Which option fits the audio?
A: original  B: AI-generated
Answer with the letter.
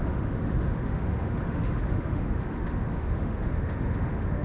B